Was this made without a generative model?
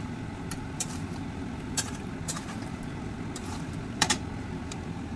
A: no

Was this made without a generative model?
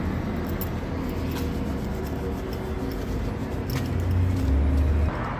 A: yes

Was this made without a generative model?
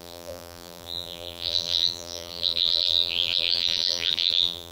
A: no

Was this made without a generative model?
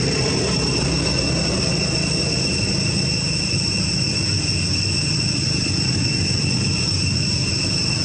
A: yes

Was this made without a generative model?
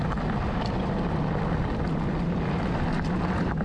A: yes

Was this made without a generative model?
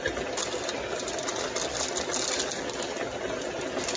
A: yes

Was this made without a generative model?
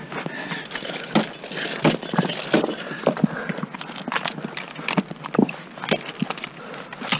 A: yes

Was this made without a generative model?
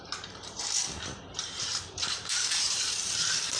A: no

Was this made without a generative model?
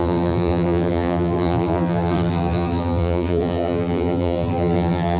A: no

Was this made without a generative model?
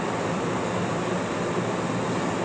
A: yes